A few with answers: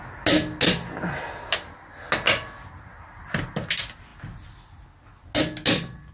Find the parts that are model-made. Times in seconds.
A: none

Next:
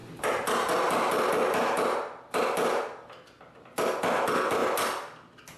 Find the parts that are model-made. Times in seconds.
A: 3.4-4.6 (vocoder, BigVGAN v2)

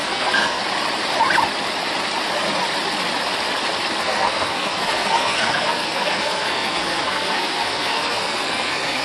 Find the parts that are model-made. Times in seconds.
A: 0.0-0.6 (codec, SNAC); 4.0-9.0

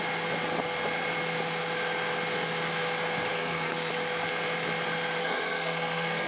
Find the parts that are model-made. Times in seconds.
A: 3.3-3.9 (codec, SNAC); 5.2-6.3

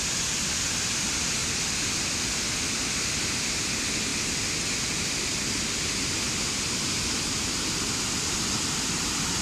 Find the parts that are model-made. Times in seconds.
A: none

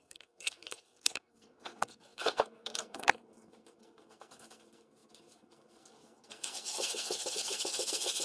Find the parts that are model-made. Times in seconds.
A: 0.0-8.2 (codec, SNAC)

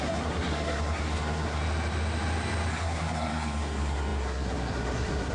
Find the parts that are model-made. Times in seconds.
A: 0.0-1.6 (codec, SNAC); 2.7-5.3

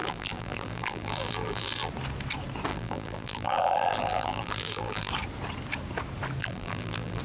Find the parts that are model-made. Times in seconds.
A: 0.0-1.9 (vocoder, BigVGAN v2); 2.7-5.1; 6.4-7.2